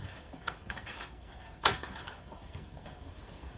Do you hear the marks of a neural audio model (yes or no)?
yes